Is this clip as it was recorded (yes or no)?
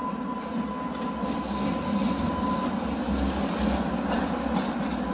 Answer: yes